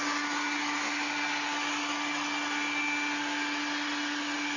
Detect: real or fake real